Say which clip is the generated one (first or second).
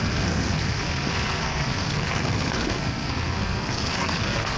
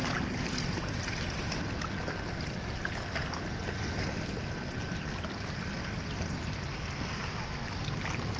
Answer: first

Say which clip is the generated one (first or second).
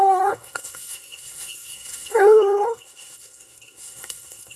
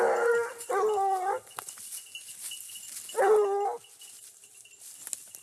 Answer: first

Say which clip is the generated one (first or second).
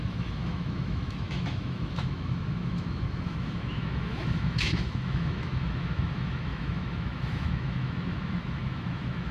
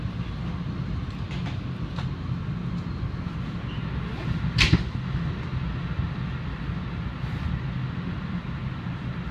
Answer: first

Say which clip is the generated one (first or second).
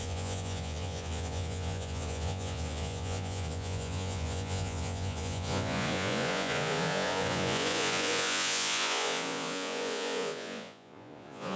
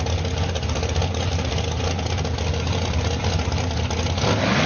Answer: first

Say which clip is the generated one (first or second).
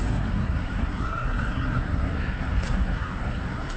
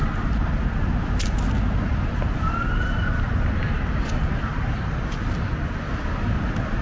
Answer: first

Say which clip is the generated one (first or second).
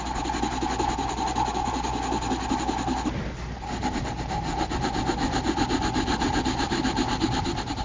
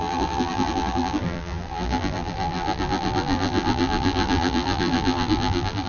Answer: second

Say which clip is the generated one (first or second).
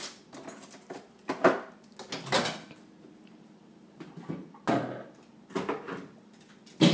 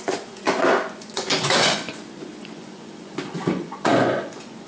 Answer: second